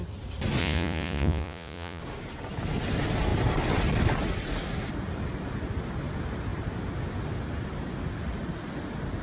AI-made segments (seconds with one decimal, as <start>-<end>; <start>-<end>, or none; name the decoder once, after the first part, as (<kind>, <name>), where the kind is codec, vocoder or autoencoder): 0.6-2.0 (vocoder, Vocos)

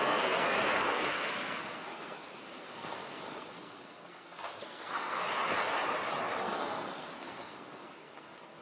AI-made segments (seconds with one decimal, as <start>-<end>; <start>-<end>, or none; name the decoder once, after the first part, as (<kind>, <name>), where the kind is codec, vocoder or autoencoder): 0.0-5.3 (codec, SNAC); 6.4-8.6

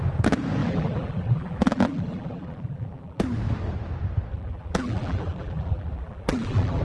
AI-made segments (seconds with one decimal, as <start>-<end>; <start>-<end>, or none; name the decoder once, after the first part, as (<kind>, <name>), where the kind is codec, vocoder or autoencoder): 0.6-3.2 (vocoder, BigVGAN v2); 4.3-6.8

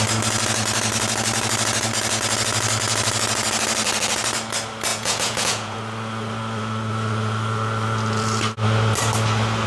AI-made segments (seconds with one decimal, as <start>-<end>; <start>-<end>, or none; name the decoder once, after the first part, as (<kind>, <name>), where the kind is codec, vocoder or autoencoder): 4.9-5.8 (vocoder, Vocos)

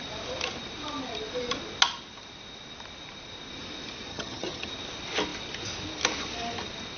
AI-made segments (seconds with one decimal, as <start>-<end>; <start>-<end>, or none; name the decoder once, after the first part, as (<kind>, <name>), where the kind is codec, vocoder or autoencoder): 4.1-4.7 (vocoder, HiFi-GAN)

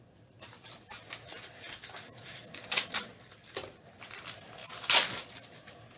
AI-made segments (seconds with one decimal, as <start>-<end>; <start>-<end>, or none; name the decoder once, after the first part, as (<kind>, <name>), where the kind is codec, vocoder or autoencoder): 0.0-4.6 (vocoder, BigVGAN v2); 5.2-6.0